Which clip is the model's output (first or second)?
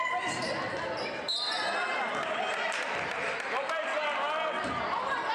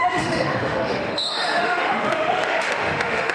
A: second